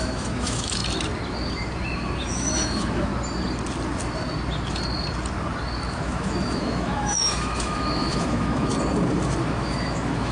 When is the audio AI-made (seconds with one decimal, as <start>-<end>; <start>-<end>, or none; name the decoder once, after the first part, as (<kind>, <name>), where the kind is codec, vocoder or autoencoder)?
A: 0.0-0.8 (autoencoder, DAC-VAE); 2.3-3.1; 5.9-8.7; 9.4-10.3